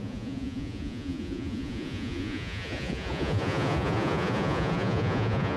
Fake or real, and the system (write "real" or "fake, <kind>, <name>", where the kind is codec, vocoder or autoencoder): fake, vocoder, Vocos